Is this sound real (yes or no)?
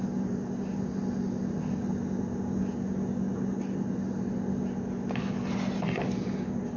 yes